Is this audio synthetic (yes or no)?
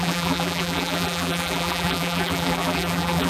yes